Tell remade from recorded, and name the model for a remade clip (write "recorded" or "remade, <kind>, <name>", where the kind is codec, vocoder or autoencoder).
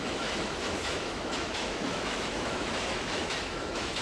remade, autoencoder, DAC-VAE